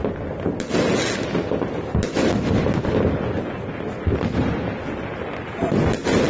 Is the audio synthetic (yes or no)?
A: no